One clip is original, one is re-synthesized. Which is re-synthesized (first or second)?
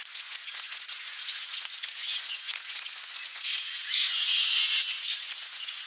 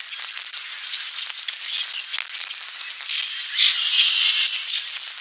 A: first